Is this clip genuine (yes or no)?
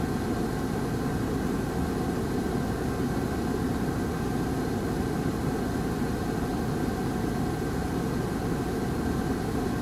yes